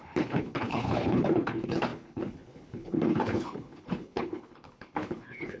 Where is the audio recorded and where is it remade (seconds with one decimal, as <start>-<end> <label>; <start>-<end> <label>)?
0.0-5.6 remade